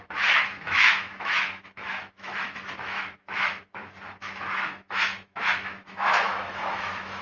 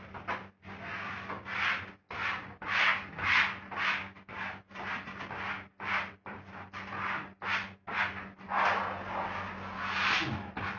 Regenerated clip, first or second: first